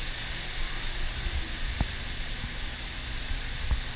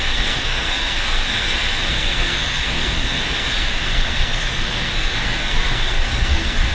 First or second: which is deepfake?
second